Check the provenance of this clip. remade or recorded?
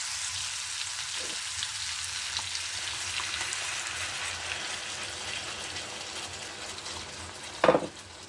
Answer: recorded